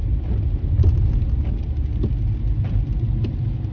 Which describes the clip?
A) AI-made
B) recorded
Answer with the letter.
B